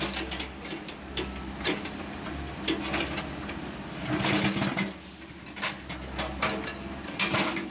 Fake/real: real